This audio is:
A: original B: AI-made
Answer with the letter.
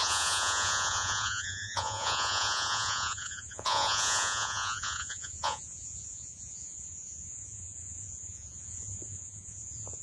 B